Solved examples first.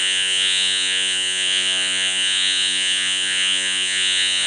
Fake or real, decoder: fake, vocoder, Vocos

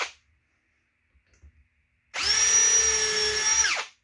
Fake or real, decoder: real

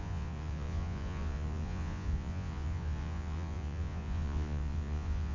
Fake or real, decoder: fake, vocoder, Vocos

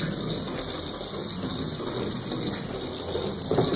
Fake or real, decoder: real